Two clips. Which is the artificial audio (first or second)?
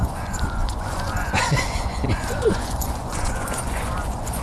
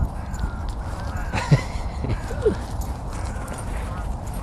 first